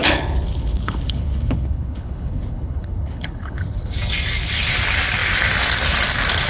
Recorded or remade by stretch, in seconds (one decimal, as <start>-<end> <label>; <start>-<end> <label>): 0.0-3.9 remade; 3.9-6.5 recorded